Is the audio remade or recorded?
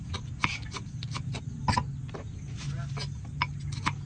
recorded